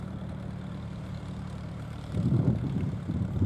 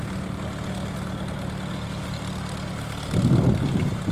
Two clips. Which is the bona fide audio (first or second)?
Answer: second